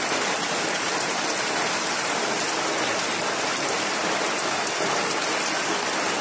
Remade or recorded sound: remade